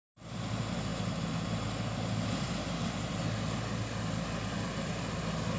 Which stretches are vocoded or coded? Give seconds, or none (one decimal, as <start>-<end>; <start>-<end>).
none